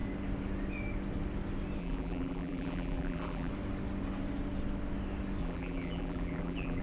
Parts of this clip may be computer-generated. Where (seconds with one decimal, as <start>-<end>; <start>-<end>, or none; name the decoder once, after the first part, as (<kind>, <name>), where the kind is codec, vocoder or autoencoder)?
1.8-3.5 (vocoder, BigVGAN v2); 5.4-6.8